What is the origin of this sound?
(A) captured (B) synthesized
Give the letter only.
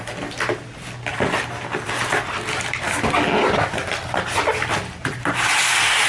A